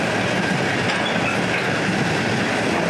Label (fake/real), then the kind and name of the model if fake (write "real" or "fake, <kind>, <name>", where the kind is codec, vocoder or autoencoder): real